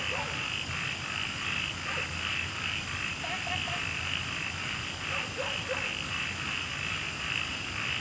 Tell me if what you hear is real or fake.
real